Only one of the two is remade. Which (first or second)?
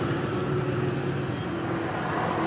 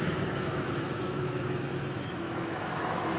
second